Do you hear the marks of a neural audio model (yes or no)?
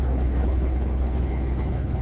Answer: yes